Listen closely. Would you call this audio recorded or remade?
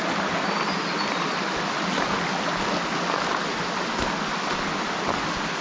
recorded